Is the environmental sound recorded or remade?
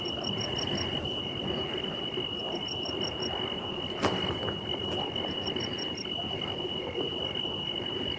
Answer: recorded